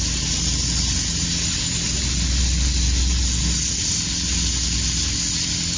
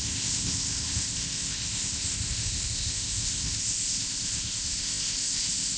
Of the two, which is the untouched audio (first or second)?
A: first